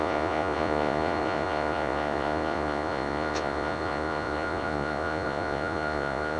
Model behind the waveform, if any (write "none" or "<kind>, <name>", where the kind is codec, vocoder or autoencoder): vocoder, Vocos